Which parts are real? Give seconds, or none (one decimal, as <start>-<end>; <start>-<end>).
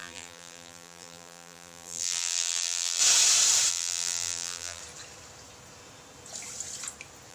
3.0-3.7; 4.8-7.3